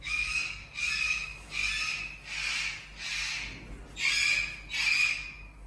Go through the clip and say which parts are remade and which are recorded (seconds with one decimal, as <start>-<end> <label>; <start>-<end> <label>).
0.0-1.6 remade; 1.6-5.0 recorded; 5.0-5.7 remade